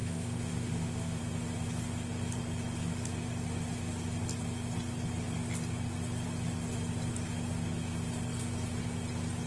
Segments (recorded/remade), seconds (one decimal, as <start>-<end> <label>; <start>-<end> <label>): 0.0-1.2 remade; 1.2-9.5 recorded